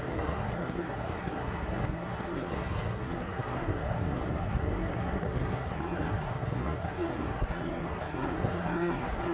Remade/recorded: remade